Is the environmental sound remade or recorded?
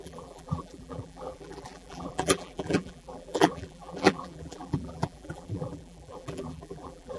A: remade